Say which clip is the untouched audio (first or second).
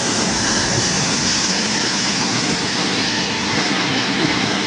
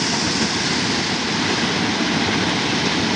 second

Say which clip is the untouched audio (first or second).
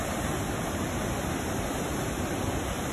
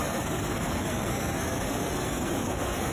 first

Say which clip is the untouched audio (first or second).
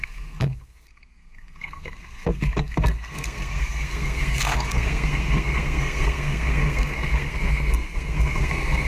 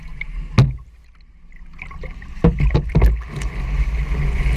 second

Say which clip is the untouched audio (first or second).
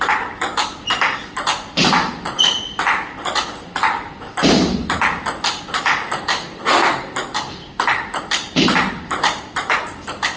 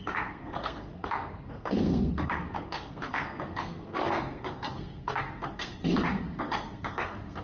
first